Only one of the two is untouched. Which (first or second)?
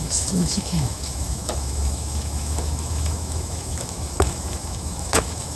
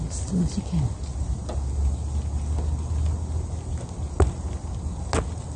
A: second